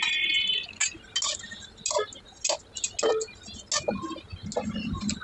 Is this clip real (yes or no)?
yes